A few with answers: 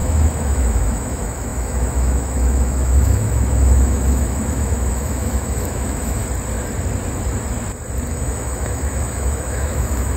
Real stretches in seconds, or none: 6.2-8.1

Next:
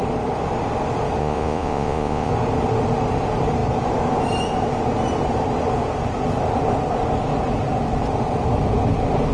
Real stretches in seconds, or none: 0.0-1.2; 2.3-9.3

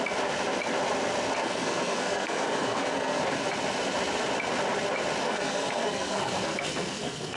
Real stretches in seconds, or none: 0.0-1.4; 3.2-5.2

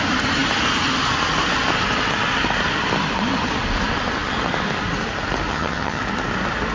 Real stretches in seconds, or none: 0.0-5.5; 6.0-6.7

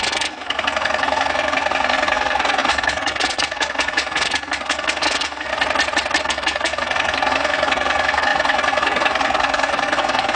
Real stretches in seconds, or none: 5.5-6.2

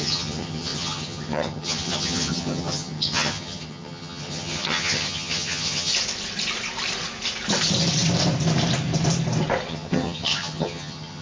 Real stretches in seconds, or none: 5.9-9.7